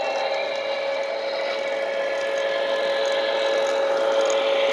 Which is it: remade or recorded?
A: recorded